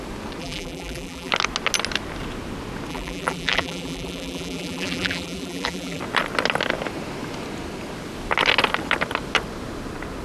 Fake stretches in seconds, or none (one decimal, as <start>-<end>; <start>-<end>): 0.4-1.3; 2.9-6.0